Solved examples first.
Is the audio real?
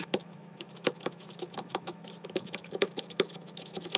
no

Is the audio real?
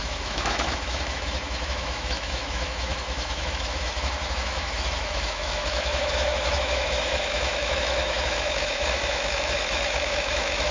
no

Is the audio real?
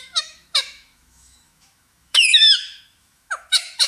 no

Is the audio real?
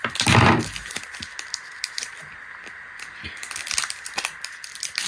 yes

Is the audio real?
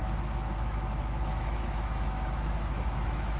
no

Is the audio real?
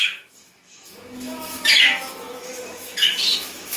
no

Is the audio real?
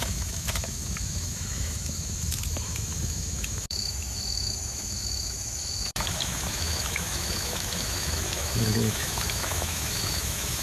no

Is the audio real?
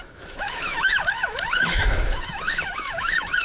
no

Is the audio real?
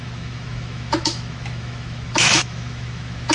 no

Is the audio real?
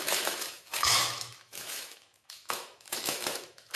no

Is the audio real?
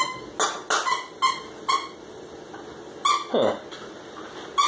yes